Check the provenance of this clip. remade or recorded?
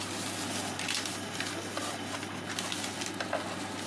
recorded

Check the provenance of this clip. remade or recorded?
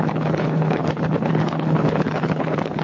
remade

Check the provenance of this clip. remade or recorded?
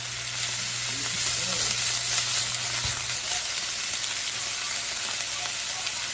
recorded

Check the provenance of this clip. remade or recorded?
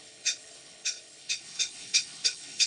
remade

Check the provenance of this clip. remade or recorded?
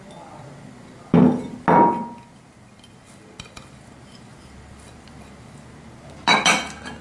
recorded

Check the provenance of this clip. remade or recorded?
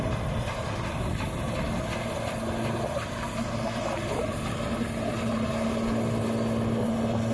recorded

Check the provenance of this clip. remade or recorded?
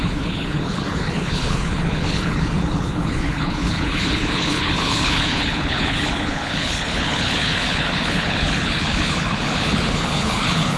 remade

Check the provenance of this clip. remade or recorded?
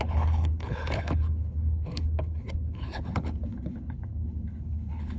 remade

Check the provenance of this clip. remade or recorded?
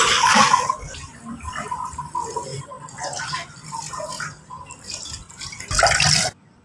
recorded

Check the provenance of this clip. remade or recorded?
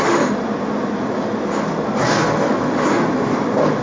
recorded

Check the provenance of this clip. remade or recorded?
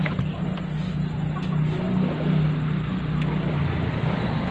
recorded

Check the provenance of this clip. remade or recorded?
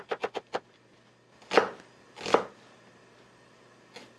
recorded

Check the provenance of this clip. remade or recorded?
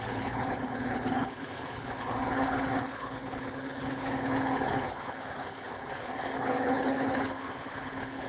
remade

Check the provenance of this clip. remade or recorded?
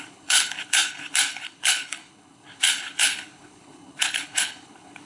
remade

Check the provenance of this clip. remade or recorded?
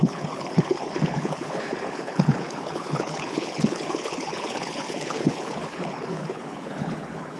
remade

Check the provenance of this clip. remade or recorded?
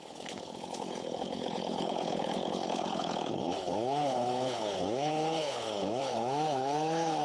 remade